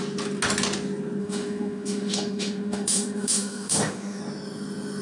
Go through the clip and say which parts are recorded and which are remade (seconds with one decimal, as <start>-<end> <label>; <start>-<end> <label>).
0.0-1.2 recorded; 1.2-4.2 remade; 4.2-5.0 recorded